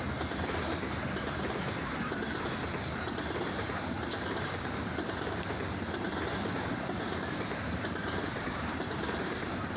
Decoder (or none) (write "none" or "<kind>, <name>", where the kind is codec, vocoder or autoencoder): vocoder, BigVGAN v2